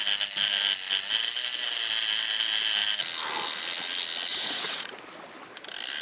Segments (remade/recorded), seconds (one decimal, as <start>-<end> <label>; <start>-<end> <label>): 0.0-4.3 recorded; 4.3-5.0 remade; 5.0-6.0 recorded